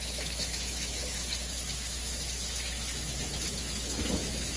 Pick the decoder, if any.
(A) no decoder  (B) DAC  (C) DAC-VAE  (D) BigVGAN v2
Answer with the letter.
C